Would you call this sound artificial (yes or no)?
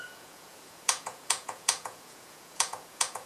yes